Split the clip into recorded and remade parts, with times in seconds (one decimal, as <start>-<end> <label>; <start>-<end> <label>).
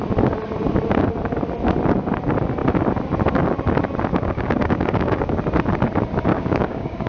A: 0.0-4.1 recorded; 4.1-5.4 remade; 5.4-6.3 recorded; 6.3-7.1 remade